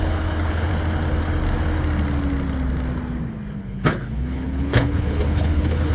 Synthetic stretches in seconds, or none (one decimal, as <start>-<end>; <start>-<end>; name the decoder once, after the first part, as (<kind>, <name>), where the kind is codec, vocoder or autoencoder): 0.0-0.7 (codec, HILCodec); 3.6-5.9